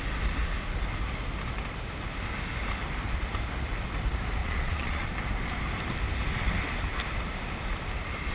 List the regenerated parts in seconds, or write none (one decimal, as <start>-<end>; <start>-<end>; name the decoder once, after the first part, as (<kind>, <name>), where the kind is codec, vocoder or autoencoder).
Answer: 4.4-5.1 (vocoder, Vocos)